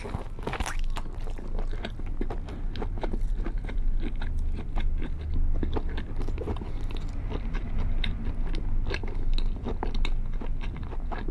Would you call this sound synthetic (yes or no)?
no